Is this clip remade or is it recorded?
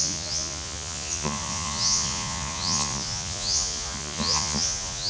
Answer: remade